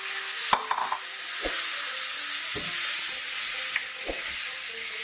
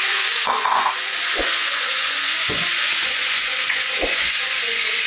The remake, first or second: second